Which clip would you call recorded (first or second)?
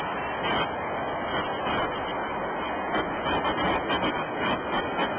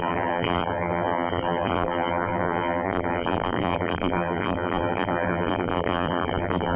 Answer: first